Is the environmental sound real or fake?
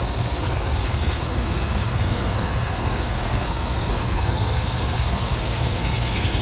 fake